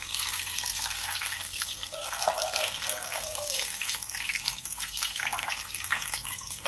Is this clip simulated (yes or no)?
yes